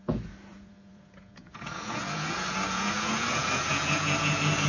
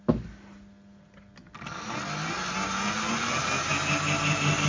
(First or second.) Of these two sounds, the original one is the second